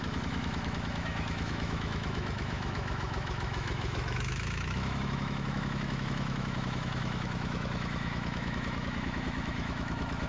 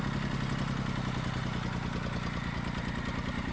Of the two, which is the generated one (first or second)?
first